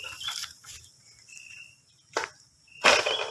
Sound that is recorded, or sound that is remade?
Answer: recorded